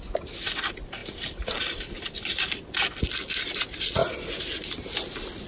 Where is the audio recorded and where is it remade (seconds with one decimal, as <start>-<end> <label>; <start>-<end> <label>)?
0.0-5.5 recorded

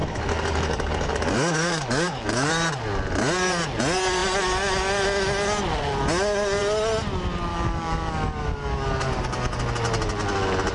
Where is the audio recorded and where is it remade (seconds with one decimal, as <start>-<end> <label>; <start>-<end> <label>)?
0.0-2.5 remade; 2.5-7.5 recorded; 7.5-9.6 remade; 9.6-10.7 recorded

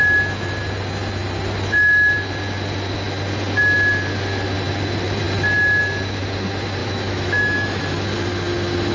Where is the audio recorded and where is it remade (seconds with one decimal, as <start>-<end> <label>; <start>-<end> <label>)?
0.0-6.8 recorded; 6.8-7.8 remade; 7.8-8.9 recorded

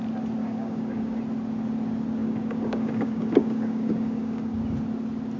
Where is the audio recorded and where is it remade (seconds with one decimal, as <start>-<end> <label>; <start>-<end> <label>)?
0.0-0.4 recorded; 0.4-1.2 remade; 1.2-2.2 recorded; 2.2-4.6 remade; 4.6-5.4 recorded